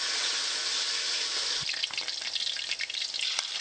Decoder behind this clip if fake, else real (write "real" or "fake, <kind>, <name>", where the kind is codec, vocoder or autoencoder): real